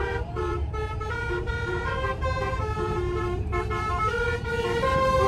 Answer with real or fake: fake